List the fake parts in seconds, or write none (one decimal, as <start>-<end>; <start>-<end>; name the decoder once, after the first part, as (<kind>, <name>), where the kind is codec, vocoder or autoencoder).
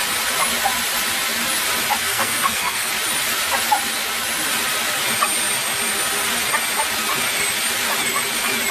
2.0-2.9 (codec, SNAC)